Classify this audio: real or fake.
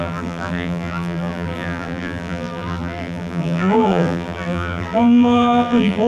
fake